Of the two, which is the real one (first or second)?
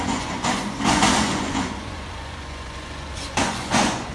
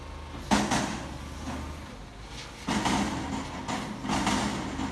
second